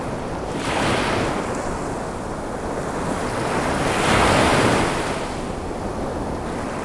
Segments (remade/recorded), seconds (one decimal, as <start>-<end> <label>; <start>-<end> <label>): 0.0-6.8 recorded